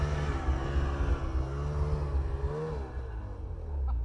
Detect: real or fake real